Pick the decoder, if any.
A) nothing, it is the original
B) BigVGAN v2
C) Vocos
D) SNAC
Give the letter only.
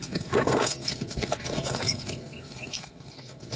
D